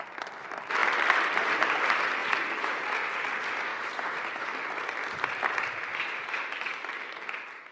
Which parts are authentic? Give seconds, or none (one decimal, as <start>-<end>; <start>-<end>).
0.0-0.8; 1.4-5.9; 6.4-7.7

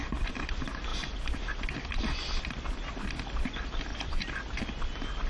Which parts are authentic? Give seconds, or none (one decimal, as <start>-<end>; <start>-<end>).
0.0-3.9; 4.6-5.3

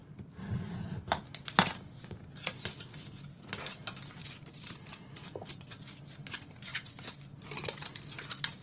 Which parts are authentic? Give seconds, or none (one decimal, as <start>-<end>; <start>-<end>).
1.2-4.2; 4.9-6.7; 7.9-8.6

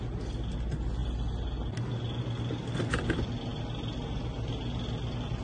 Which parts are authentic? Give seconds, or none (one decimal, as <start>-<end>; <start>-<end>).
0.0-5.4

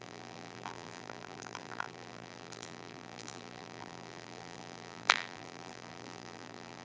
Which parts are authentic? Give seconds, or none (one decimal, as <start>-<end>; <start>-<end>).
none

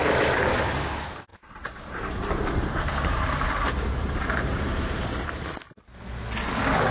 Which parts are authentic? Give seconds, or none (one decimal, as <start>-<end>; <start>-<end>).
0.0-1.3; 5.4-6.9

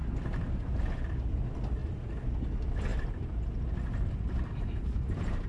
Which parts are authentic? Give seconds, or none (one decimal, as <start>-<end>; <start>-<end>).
0.0-1.8; 2.3-2.9